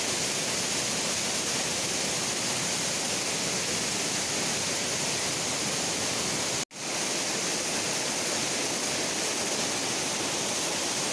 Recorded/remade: recorded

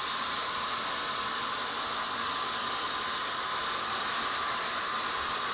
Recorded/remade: recorded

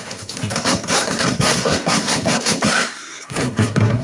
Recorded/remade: remade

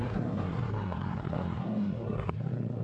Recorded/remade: remade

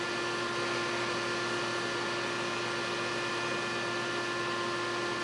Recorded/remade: recorded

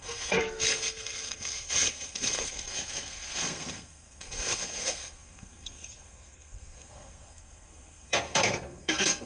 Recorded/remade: remade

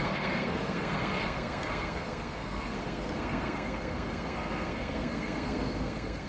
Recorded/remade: remade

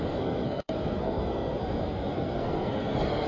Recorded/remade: remade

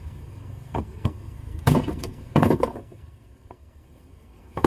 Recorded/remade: remade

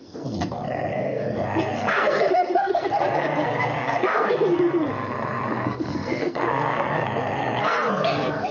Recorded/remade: remade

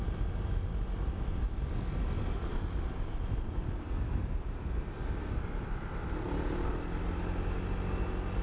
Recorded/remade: recorded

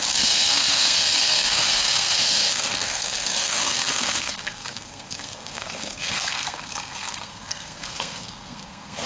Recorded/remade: remade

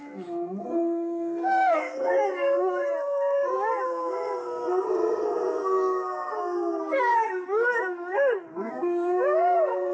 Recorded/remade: remade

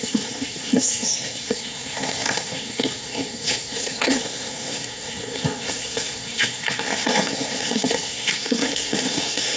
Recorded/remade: remade